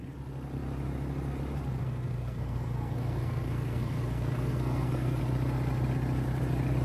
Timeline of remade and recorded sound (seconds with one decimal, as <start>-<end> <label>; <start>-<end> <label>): 0.0-1.8 recorded; 1.8-5.2 remade; 5.2-6.8 recorded